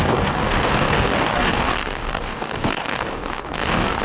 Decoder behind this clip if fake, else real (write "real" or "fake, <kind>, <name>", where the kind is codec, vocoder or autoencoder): fake, codec, DAC